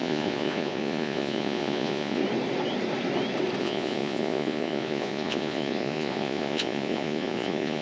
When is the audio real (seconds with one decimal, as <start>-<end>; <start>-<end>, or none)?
2.2-3.6